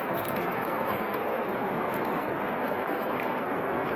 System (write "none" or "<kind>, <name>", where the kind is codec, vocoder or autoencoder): codec, SNAC